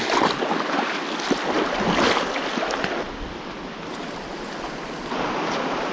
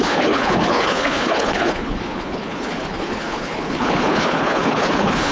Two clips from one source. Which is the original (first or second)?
first